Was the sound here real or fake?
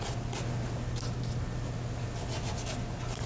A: real